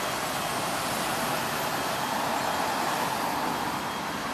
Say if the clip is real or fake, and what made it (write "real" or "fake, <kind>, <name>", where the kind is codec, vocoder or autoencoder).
real